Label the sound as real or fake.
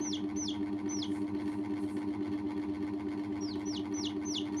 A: real